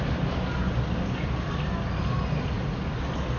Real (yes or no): yes